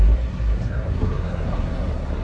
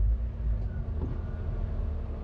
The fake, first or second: first